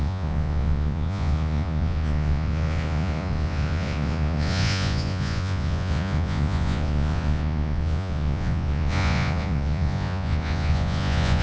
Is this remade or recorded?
remade